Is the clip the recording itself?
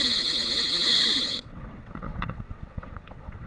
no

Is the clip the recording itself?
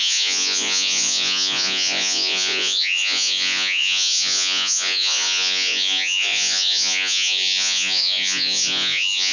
no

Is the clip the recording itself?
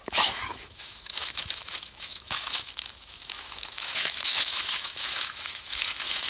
no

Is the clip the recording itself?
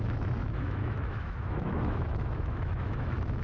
no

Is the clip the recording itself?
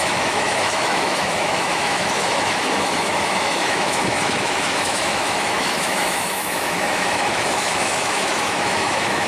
no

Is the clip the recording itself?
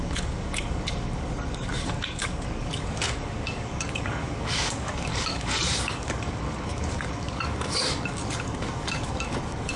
no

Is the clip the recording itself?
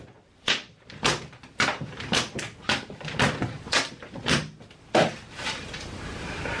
no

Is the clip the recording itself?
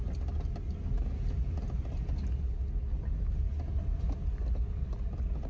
yes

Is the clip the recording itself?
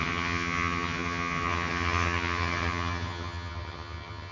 no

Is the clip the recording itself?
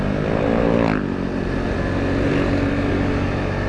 yes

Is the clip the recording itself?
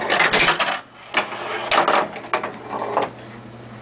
yes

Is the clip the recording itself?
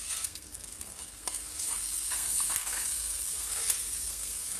no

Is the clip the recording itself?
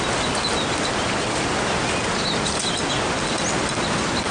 yes